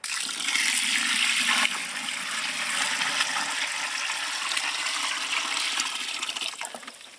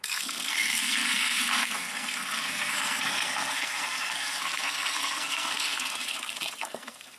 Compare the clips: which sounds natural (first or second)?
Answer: first